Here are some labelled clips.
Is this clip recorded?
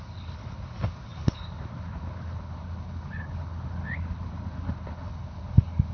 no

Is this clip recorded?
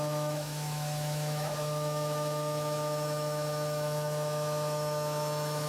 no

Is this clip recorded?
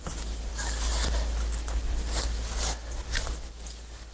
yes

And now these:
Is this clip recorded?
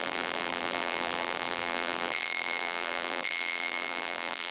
no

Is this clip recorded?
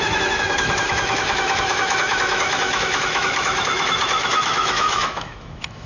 no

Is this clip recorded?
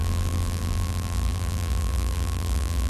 no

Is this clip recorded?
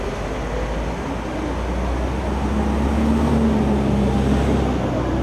yes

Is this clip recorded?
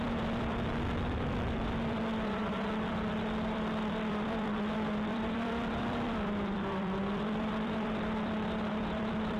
no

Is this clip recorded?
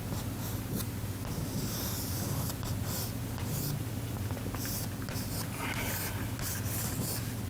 yes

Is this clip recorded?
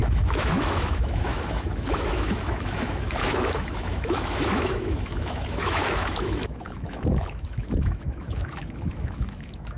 no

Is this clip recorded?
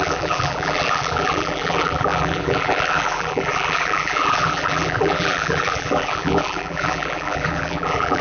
no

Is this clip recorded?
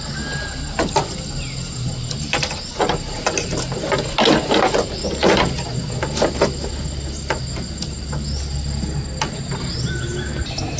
yes